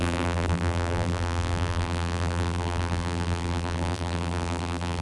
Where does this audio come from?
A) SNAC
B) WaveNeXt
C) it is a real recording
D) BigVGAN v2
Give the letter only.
D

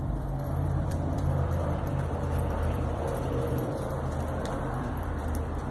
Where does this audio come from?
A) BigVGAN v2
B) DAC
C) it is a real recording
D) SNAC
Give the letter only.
A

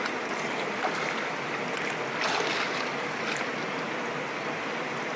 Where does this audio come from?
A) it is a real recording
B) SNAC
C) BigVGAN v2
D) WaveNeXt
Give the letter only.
A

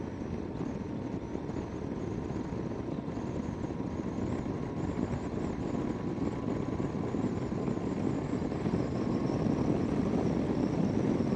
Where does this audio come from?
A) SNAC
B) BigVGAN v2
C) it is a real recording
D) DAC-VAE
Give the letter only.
C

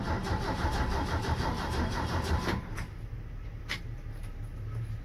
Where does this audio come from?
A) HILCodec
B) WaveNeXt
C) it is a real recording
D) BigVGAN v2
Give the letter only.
D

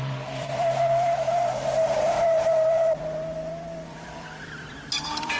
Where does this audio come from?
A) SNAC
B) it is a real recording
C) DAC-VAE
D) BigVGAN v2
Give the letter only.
D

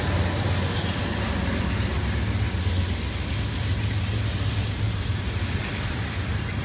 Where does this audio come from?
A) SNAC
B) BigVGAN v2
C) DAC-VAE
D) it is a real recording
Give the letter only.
D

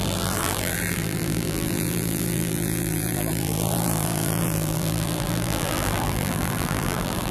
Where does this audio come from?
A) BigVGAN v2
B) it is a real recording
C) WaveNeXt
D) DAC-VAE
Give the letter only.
A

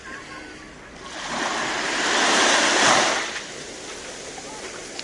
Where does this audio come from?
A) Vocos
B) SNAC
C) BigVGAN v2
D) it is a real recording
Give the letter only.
D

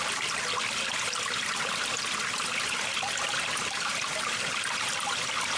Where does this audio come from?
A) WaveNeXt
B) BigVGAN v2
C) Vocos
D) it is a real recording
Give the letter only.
D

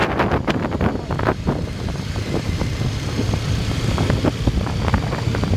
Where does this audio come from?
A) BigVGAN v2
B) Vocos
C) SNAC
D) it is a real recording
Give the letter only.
D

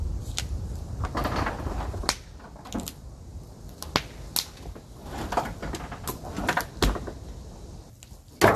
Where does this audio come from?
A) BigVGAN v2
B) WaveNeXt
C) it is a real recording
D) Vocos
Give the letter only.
C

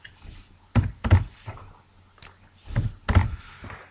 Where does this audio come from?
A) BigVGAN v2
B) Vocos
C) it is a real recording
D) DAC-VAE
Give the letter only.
C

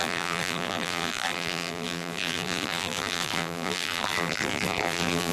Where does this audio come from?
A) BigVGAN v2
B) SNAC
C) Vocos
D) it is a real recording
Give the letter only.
A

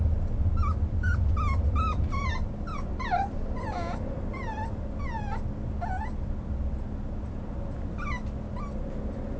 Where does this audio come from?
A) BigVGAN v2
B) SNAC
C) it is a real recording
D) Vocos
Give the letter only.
C